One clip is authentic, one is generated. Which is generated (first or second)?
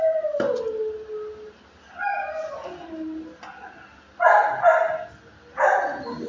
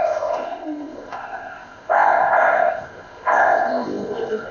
second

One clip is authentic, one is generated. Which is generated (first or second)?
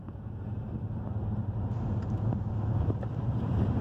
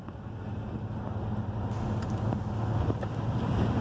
first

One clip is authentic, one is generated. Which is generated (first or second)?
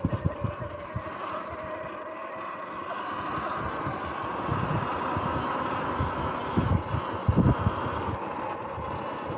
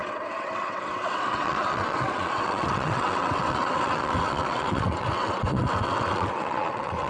second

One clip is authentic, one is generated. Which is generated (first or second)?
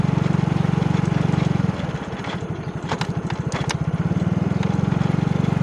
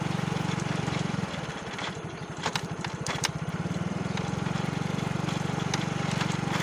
second